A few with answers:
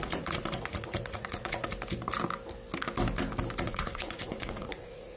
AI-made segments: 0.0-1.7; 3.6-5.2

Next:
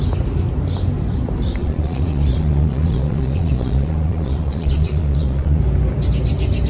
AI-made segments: 1.6-5.6

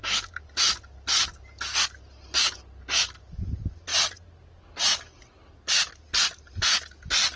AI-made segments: none